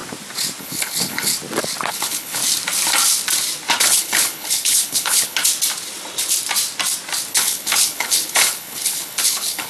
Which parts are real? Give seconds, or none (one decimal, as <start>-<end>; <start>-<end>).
0.0-0.6; 1.3-1.9; 2.4-3.8; 5.4-7.3